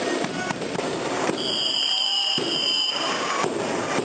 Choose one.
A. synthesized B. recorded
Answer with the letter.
A